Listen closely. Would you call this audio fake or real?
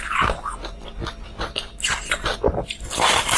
real